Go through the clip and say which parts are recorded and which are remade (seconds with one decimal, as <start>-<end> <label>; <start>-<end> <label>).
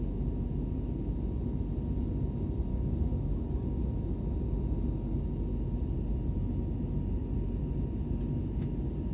0.0-2.7 recorded; 2.7-3.8 remade; 3.8-9.1 recorded